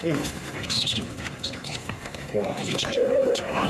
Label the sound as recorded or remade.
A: remade